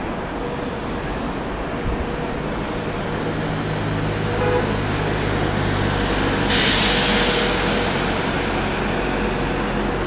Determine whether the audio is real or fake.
real